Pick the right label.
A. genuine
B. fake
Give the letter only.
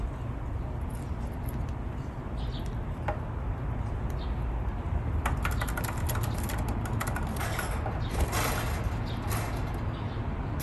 A